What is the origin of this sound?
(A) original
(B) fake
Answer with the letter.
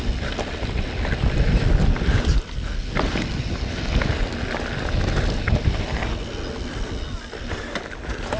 A